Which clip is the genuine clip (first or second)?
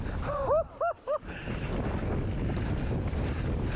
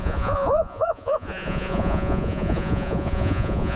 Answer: first